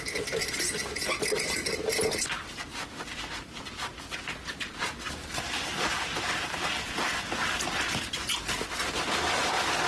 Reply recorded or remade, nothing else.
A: recorded